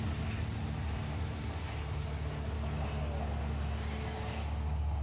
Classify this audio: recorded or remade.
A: recorded